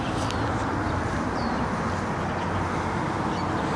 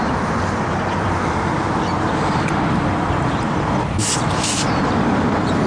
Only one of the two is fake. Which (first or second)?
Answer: second